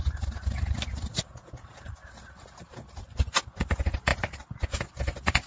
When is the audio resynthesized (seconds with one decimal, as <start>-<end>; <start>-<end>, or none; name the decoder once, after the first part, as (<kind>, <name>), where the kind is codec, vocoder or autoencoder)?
none